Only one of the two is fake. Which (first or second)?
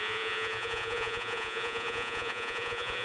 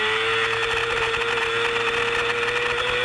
first